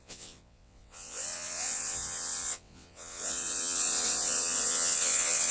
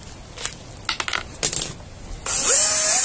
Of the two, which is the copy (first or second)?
first